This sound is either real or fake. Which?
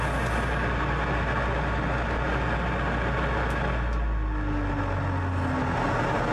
real